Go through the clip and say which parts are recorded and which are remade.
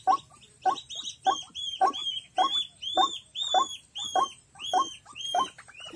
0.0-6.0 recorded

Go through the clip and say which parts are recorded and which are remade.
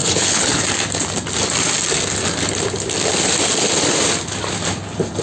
0.0-0.6 remade; 0.6-5.2 recorded